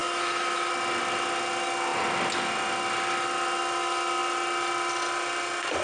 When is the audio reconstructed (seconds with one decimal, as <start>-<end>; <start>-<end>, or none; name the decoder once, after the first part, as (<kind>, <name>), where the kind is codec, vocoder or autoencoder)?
0.0-0.7 (autoencoder, DAC-VAE)